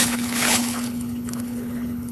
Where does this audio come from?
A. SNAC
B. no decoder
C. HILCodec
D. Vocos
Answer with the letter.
C